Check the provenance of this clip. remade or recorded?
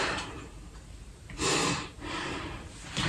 remade